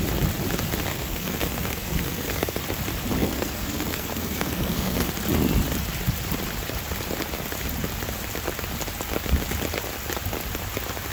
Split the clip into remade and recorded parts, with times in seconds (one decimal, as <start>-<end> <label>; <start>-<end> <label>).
0.0-0.9 recorded; 0.9-2.6 remade; 2.6-3.2 recorded; 3.2-5.1 remade; 5.1-11.1 recorded